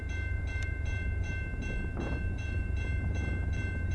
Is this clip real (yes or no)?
no